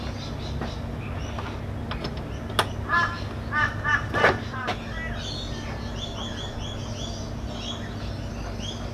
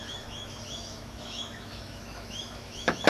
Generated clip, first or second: second